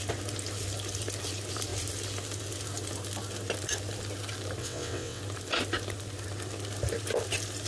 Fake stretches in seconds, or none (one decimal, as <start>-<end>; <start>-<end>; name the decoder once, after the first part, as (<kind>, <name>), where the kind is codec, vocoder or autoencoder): 4.6-5.2 (vocoder, WaveNeXt)